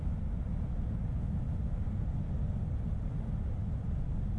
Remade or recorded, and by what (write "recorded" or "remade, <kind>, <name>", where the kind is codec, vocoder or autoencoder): recorded